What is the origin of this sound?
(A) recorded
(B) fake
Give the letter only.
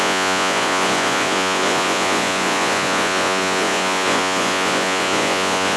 B